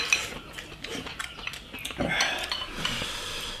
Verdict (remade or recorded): recorded